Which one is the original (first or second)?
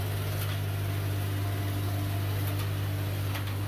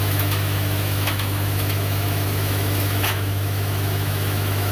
first